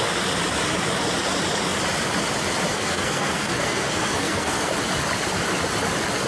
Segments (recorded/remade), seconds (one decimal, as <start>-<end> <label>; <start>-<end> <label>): 0.0-2.7 recorded; 2.7-4.7 remade; 4.7-6.3 recorded